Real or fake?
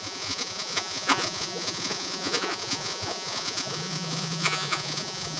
fake